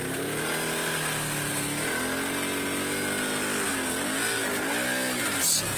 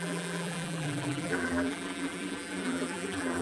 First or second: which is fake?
second